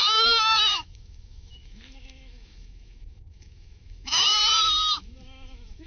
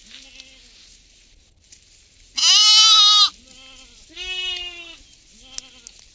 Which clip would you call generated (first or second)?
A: first